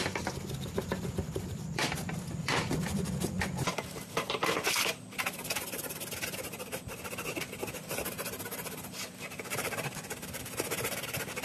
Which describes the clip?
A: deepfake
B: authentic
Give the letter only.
A